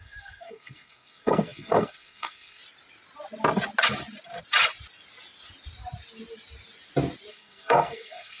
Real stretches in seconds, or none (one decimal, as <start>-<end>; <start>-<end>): 2.6-7.3